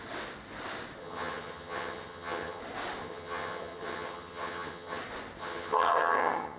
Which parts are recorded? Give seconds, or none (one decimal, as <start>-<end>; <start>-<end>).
0.0-1.0; 2.6-3.0; 5.0-5.4